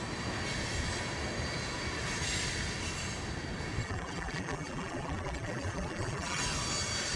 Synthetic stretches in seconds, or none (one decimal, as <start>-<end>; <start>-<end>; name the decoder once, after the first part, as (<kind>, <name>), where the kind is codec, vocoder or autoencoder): 3.8-6.4 (vocoder, BigVGAN v2)